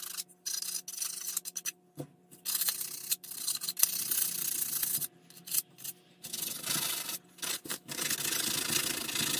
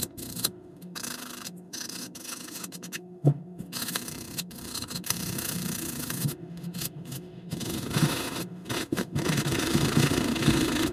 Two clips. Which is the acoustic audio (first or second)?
first